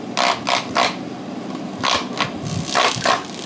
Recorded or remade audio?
recorded